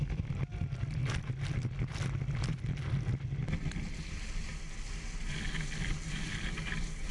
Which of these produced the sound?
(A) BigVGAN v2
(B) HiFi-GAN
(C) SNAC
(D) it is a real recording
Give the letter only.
D